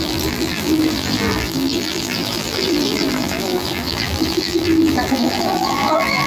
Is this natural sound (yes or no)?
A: no